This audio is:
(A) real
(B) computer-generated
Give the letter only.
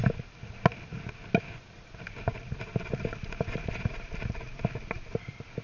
A